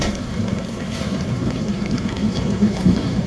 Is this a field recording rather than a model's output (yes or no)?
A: no